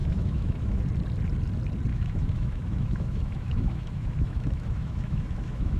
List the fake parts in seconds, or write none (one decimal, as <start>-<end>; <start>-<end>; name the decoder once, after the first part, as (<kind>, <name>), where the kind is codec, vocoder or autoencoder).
0.0-0.8 (autoencoder, DAC-VAE); 1.9-5.8